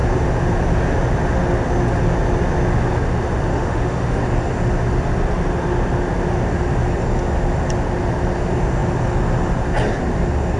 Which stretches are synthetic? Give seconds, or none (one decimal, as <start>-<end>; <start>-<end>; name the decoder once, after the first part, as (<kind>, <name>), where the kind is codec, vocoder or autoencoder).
3.5-4.2 (autoencoder, DAC-VAE)